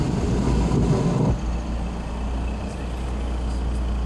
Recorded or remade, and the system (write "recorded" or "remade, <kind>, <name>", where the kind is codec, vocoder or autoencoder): recorded